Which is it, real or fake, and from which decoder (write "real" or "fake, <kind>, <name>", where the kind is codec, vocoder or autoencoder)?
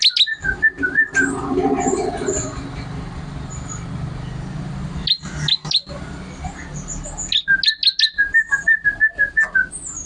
real